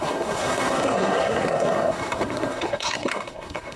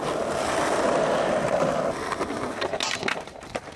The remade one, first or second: first